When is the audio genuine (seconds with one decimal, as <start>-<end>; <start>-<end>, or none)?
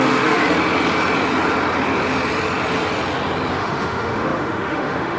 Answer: 0.4-3.5